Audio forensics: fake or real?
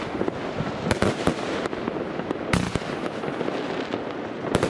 real